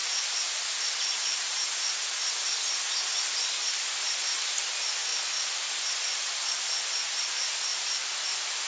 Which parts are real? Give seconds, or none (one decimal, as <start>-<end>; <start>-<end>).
1.6-8.7